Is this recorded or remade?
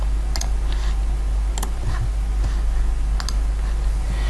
recorded